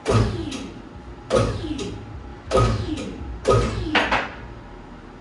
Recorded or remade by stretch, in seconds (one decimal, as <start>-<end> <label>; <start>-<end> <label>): 0.0-2.3 recorded; 2.3-2.9 remade; 2.9-5.2 recorded